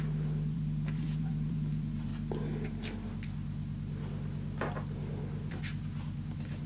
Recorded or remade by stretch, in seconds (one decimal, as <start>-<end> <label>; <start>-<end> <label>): 0.0-2.1 remade; 2.1-5.5 recorded; 5.5-6.7 remade